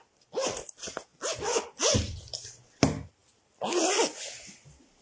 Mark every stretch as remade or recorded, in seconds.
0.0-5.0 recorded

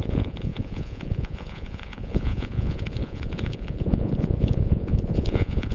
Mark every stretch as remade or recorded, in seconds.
0.0-5.7 remade

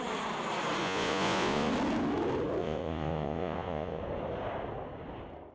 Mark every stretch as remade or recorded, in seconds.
0.0-0.8 recorded; 0.8-1.7 remade; 1.7-2.6 recorded; 2.6-4.0 remade; 4.0-5.5 recorded

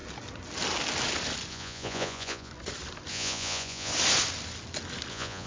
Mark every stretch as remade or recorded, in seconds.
0.0-1.5 recorded; 1.5-2.5 remade; 2.5-3.1 recorded; 3.1-3.9 remade; 3.9-5.1 recorded; 5.1-5.5 remade

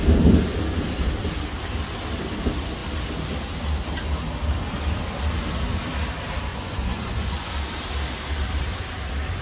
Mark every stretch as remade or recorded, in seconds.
0.0-6.5 recorded; 6.5-7.5 remade; 7.5-9.4 recorded

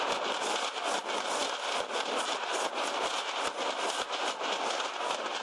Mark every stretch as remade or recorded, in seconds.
0.0-5.4 recorded

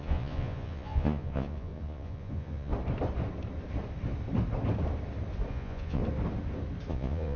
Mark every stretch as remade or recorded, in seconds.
0.0-2.7 remade; 2.7-5.5 recorded; 5.5-6.0 remade; 6.0-6.9 recorded; 6.9-7.4 remade

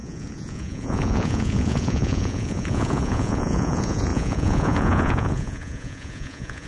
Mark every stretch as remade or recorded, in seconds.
0.0-6.7 remade